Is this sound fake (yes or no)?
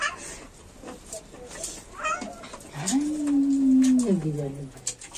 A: no